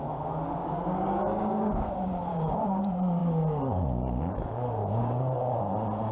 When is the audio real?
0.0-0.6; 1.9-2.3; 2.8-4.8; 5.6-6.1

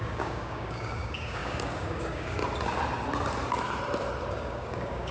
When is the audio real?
2.4-4.3

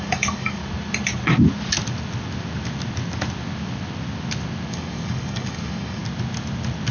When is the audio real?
0.6-4.7; 6.0-6.9

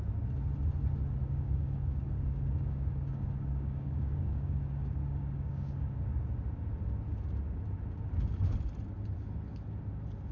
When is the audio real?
0.0-1.2; 6.2-10.3

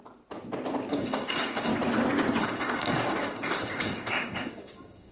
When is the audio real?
0.0-0.9; 1.7-2.4

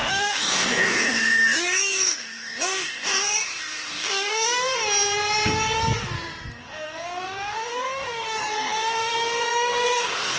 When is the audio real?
4.8-6.6

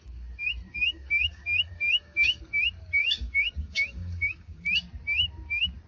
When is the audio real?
0.0-0.7; 2.4-3.0; 4.6-5.9